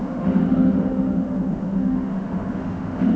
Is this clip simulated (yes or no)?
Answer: yes